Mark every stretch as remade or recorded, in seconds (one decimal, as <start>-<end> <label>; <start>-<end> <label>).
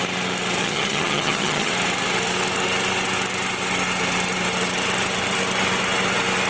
0.0-0.6 recorded; 0.6-1.7 remade; 1.7-6.5 recorded